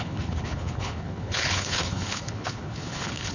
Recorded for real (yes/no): no